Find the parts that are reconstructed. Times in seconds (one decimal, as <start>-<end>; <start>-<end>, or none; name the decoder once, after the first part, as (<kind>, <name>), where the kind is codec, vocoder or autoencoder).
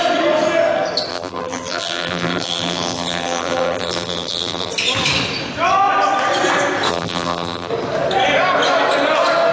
1.1-4.7 (vocoder, BigVGAN v2); 6.9-7.7